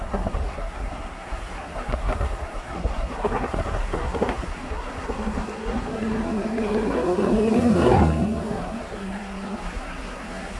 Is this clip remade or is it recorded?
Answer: remade